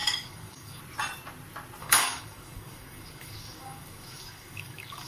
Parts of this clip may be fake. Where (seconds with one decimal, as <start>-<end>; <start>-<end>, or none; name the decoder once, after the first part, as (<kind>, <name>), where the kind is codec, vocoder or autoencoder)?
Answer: 0.0-0.8 (codec, DAC); 1.8-5.1